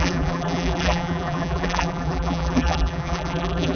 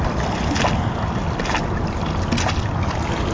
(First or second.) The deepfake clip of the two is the first